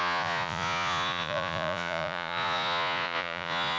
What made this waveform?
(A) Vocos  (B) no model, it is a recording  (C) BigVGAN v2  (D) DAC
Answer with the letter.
A